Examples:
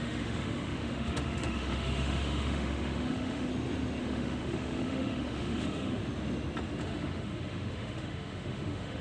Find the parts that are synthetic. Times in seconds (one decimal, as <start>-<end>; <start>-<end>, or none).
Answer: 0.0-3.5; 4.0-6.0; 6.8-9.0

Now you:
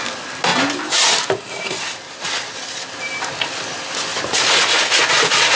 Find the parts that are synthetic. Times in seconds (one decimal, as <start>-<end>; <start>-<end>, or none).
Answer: none

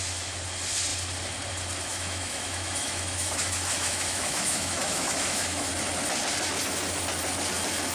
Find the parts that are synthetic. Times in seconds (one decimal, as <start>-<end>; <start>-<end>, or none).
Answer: 1.9-5.7

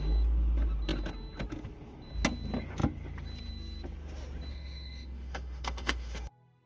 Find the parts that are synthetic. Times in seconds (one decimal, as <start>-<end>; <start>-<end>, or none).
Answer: 4.5-6.3

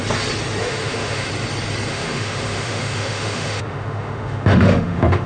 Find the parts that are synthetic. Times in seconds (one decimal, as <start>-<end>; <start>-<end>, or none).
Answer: 0.6-1.3; 1.9-5.3

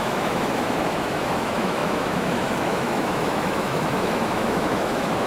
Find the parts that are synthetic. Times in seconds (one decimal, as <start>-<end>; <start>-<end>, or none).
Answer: 0.0-5.3

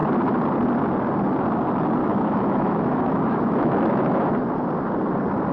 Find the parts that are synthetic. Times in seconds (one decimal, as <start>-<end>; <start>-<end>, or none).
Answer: 2.0-4.3